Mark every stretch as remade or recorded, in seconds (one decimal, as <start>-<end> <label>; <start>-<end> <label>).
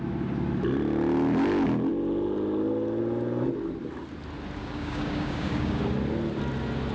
0.0-4.6 recorded; 4.6-5.8 remade; 5.8-6.9 recorded